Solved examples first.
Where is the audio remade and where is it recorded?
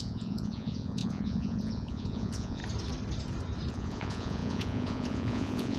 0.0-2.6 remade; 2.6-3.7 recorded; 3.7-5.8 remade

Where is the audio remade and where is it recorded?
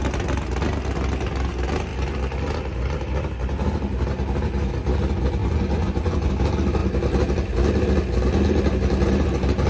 0.0-5.4 recorded; 5.4-6.3 remade; 6.3-9.7 recorded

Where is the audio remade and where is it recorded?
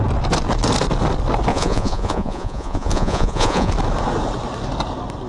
0.0-1.5 recorded; 1.5-3.7 remade; 3.7-5.3 recorded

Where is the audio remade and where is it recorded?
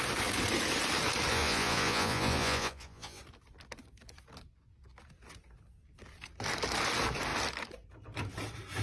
0.0-1.3 recorded; 1.3-3.2 remade; 3.2-8.8 recorded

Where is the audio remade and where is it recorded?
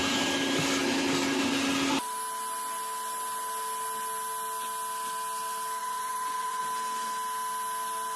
0.0-5.8 recorded; 5.8-6.6 remade; 6.6-8.2 recorded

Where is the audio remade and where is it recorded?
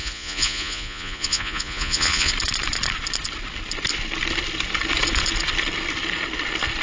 0.0-2.3 remade; 2.3-6.8 recorded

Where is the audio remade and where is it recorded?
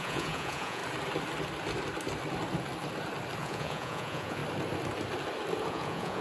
0.0-0.8 remade; 0.8-3.4 recorded; 3.4-4.4 remade; 4.4-5.7 recorded; 5.7-6.2 remade